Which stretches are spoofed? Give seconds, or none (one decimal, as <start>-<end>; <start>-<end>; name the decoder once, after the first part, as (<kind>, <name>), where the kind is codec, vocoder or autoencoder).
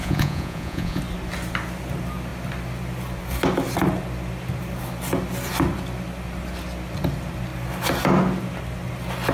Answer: 0.0-1.0 (vocoder, Vocos)